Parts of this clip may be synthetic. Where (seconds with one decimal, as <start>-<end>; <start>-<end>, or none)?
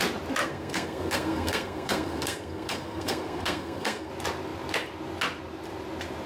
0.4-4.1